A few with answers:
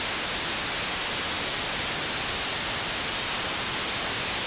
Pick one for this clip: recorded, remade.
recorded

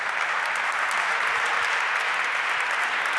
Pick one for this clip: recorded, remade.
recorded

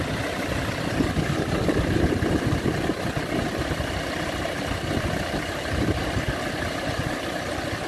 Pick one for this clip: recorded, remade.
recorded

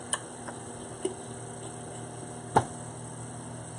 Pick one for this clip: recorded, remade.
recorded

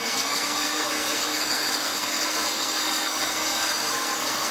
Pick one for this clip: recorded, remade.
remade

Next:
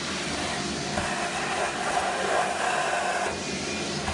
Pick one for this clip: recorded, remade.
recorded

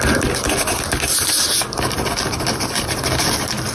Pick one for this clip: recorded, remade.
recorded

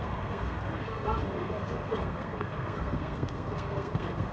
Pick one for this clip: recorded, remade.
remade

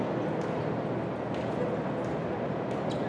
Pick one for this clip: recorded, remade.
recorded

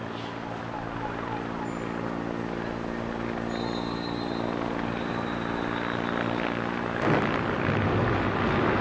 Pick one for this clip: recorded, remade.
recorded